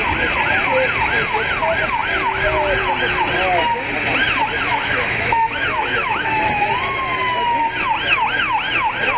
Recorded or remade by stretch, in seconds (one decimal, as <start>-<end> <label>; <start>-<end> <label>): 0.0-4.7 recorded; 4.7-6.4 remade; 6.4-9.2 recorded